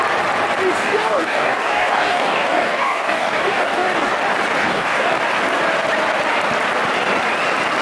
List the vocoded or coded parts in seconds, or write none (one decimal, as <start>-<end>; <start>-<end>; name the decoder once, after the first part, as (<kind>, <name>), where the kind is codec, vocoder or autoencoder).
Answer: 0.8-4.1 (codec, DAC); 4.6-5.2